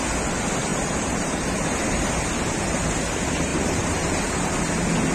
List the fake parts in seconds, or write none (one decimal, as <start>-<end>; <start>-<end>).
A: 0.7-2.1; 3.5-4.5